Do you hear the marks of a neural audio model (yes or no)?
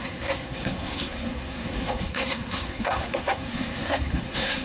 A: yes